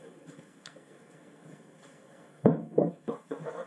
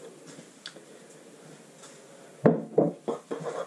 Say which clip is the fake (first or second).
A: first